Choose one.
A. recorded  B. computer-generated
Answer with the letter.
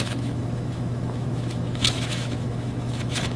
B